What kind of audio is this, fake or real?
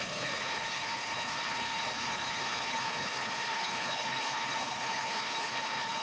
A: fake